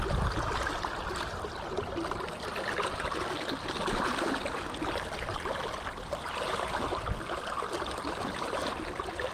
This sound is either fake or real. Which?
real